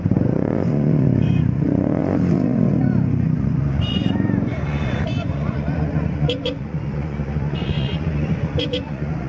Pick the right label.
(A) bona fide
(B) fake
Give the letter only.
B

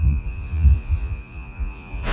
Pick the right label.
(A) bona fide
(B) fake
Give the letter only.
B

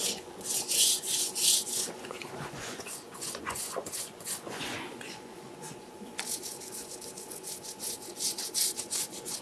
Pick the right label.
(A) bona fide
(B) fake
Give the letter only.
B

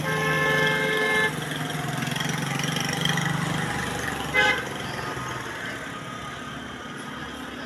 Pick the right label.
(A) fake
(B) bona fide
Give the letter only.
B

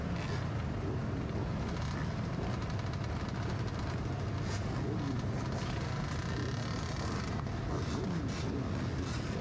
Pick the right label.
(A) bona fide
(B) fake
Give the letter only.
A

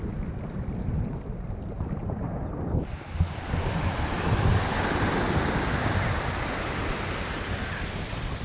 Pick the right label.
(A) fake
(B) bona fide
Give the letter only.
B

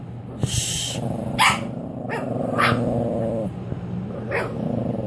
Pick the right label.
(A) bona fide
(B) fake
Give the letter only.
A